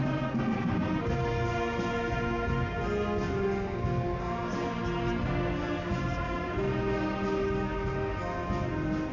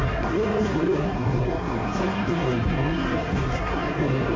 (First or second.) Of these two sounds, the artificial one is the second